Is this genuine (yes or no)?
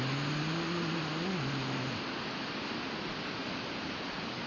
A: yes